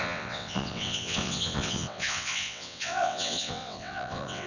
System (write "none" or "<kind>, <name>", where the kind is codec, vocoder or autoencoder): vocoder, WaveNeXt